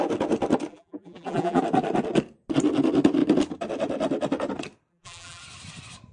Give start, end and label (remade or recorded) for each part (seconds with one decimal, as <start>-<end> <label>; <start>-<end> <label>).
0.0-0.7 recorded; 0.7-1.6 remade; 1.6-4.9 recorded; 4.9-5.4 remade; 5.4-6.1 recorded